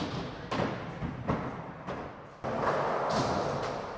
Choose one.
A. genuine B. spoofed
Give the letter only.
A